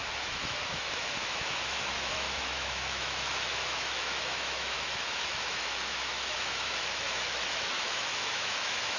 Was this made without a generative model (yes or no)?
no